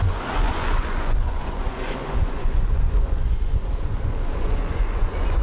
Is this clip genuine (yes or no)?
no